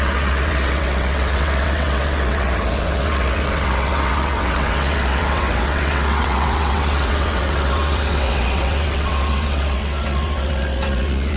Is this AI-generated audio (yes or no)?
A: yes